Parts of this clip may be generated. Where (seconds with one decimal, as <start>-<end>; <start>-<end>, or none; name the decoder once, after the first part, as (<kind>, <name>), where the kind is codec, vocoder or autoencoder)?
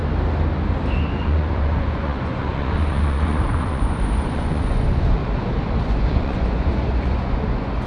1.1-5.2 (vocoder, Vocos); 5.8-7.9